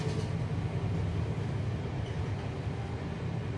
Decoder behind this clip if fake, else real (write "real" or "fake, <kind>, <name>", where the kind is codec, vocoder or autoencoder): real